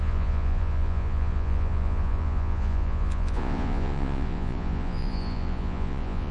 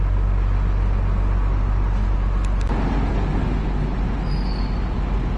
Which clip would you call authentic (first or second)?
second